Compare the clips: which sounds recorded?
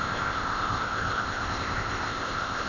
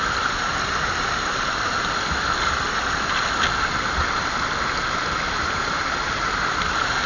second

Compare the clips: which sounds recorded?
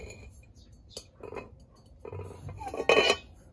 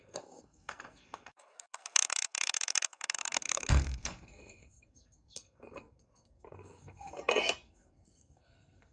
first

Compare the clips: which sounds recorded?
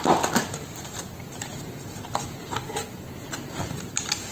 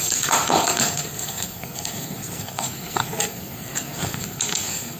first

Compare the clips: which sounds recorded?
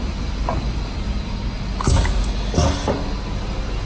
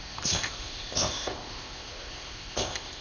first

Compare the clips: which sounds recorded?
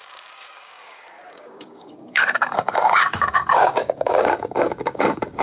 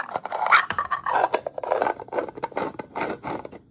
second